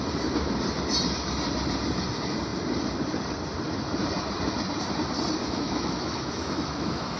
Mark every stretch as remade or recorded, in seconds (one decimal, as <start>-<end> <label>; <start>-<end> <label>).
0.0-5.4 recorded; 5.4-7.2 remade